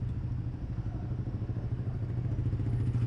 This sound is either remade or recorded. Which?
recorded